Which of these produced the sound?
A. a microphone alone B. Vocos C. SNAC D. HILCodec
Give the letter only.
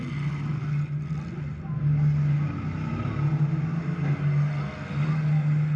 A